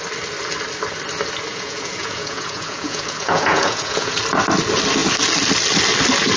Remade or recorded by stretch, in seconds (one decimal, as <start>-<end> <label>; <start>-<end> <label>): 0.0-1.5 recorded; 1.5-4.2 remade; 4.2-6.4 recorded